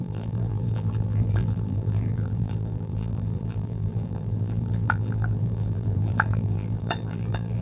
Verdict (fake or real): fake